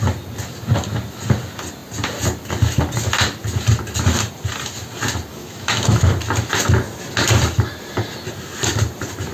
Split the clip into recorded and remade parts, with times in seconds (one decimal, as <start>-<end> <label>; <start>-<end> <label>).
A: 0.0-5.3 recorded; 5.3-6.1 remade; 6.1-9.3 recorded